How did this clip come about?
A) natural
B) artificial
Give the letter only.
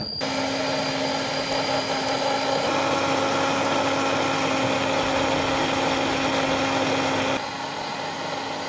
A